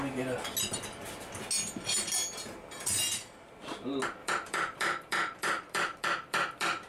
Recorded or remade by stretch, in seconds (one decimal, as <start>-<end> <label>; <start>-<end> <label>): 0.0-4.2 recorded; 4.2-6.9 remade